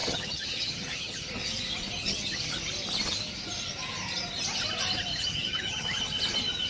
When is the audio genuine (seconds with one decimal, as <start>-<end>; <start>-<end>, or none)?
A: 1.3-2.0; 2.6-5.1; 6.0-6.7